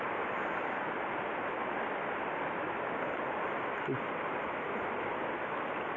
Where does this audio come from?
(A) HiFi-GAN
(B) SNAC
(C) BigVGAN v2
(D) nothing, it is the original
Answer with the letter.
D